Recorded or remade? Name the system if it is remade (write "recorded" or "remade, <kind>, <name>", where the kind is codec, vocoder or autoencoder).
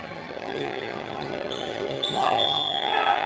remade, vocoder, HiFi-GAN